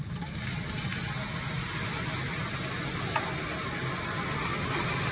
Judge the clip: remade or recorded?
recorded